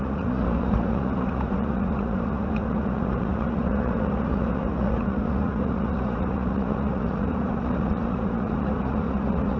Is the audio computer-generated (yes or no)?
yes